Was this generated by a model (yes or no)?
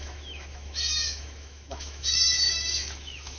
yes